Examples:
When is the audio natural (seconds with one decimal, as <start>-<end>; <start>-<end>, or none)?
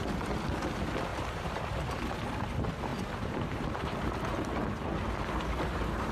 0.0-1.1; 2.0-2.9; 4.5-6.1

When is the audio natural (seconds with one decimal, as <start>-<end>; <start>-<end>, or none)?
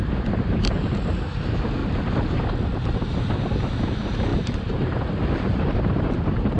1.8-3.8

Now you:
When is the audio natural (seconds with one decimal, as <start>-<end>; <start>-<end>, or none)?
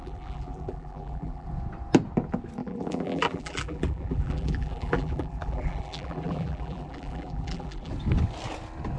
1.5-2.6; 7.9-9.0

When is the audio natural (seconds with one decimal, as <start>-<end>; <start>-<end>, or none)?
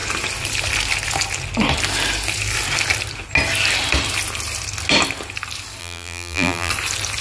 0.0-5.8; 6.7-7.2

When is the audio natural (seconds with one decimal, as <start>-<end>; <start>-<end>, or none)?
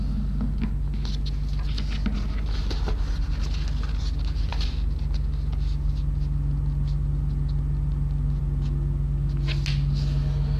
0.0-10.6